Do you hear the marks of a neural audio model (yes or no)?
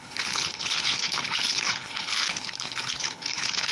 yes